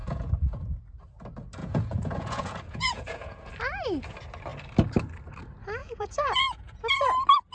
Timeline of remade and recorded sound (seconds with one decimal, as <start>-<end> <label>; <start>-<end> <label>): 0.0-0.8 remade; 0.8-1.6 recorded; 1.6-3.5 remade; 3.5-5.8 recorded; 5.8-6.8 remade; 6.8-7.5 recorded